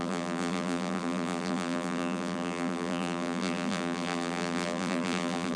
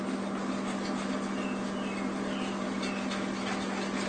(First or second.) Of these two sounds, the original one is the second